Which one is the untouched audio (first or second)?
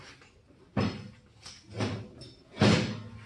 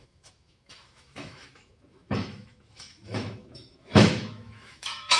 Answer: first